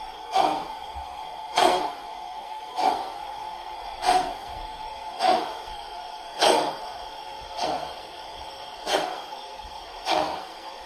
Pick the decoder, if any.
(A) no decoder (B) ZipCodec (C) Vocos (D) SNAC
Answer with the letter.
D